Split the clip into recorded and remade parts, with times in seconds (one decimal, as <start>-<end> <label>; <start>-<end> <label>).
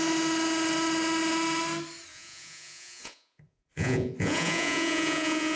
0.0-2.1 recorded; 2.1-5.6 remade